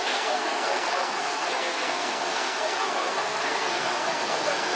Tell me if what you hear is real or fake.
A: fake